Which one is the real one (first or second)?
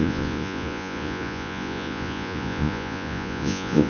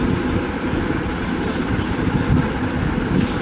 second